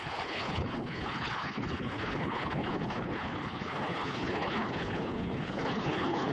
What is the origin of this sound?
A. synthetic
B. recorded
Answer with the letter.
A